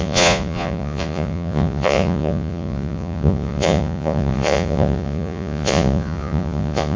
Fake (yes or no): yes